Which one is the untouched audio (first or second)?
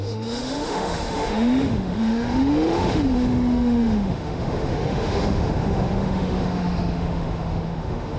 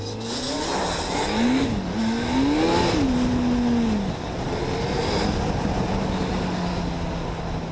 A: second